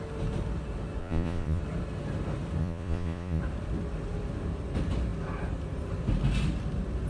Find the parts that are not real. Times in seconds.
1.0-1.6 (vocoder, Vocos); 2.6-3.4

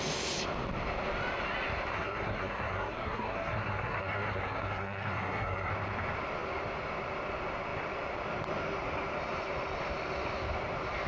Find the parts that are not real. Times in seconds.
1.9-5.7 (codec, SNAC)

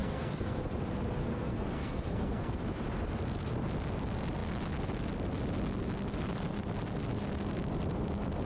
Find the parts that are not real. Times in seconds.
0.0-0.6 (codec, SNAC); 1.2-2.6